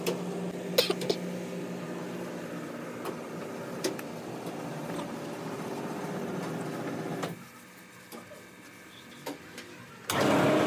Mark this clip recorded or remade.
recorded